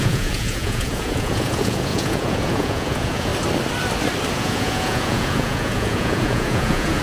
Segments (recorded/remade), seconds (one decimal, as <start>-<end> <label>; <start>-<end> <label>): 0.0-3.3 remade; 3.3-4.3 recorded; 4.3-7.0 remade